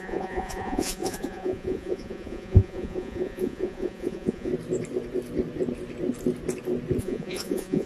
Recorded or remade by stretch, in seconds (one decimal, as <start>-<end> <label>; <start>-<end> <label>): 0.0-4.5 remade; 4.5-7.0 recorded; 7.0-7.9 remade